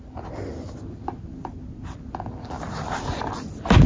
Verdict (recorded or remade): recorded